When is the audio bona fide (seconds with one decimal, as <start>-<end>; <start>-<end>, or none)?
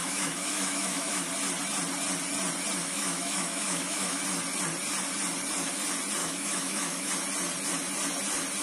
1.3-2.8; 4.2-6.2; 7.1-8.6